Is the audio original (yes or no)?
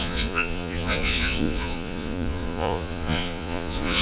no